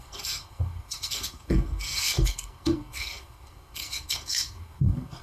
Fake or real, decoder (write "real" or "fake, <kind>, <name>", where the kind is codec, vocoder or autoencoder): fake, codec, SNAC